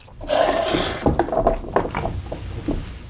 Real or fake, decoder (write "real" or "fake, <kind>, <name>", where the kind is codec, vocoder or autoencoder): real